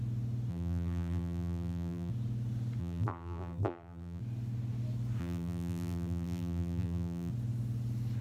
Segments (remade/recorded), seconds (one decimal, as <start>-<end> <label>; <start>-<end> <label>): 0.0-0.5 recorded; 0.5-2.1 remade; 2.1-2.8 recorded; 2.8-4.2 remade; 4.2-5.2 recorded; 5.2-7.3 remade; 7.3-8.2 recorded